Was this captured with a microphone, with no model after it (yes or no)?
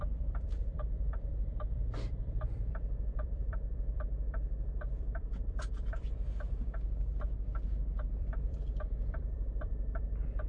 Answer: no